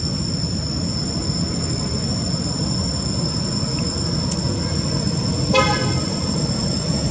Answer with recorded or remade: recorded